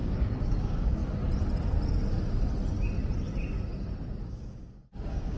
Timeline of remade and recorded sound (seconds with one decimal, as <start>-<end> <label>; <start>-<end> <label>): 0.0-1.0 remade; 1.0-4.2 recorded; 4.2-5.4 remade